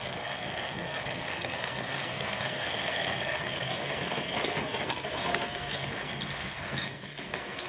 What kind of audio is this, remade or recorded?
remade